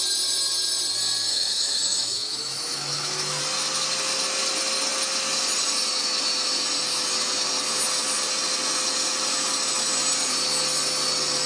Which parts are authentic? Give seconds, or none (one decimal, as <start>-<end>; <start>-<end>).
0.0-1.3; 3.4-11.5